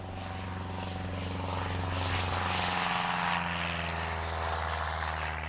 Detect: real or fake real